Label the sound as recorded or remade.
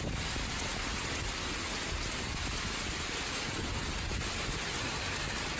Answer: recorded